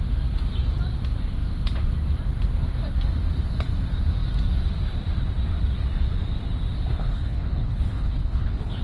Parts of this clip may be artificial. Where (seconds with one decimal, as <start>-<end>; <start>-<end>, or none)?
6.9-8.8